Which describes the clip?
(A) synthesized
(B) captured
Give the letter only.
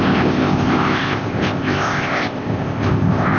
A